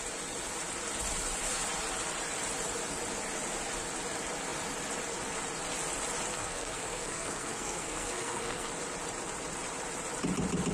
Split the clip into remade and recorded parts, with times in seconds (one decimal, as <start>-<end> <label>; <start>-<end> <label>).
0.0-6.3 recorded; 6.3-8.7 remade; 8.7-10.7 recorded